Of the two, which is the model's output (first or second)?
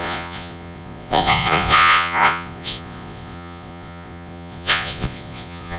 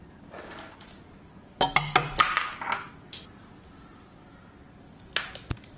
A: first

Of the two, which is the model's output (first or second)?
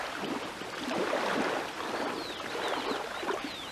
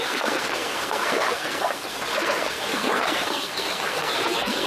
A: second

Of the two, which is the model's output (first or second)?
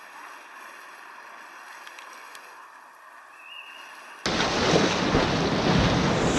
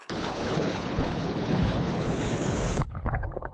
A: second